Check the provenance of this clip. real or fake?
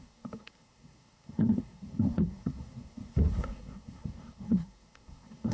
fake